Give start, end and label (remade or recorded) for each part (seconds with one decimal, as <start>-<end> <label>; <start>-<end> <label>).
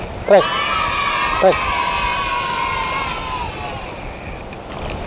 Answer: 0.0-2.1 recorded; 2.1-3.0 remade; 3.0-5.1 recorded